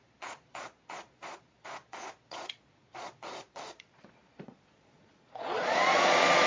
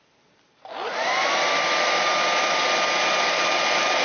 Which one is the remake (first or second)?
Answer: first